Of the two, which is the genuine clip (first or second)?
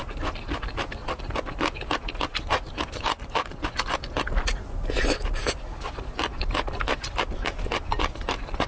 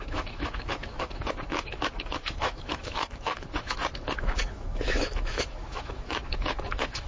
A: first